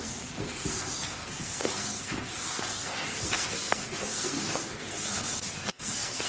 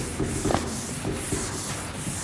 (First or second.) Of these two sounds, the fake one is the first